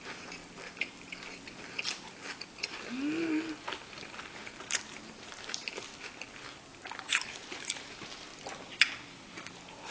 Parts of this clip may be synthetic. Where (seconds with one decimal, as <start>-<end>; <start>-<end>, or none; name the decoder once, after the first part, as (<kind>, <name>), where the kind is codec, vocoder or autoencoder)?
0.0-0.4 (vocoder, BigVGAN v2); 4.3-5.9; 7.1-8.3